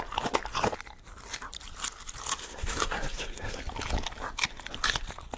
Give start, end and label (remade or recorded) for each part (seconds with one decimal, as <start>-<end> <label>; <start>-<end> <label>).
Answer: 0.0-2.4 recorded; 2.4-3.6 remade; 3.6-5.4 recorded